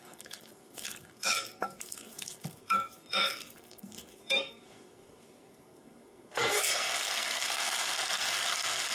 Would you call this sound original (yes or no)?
no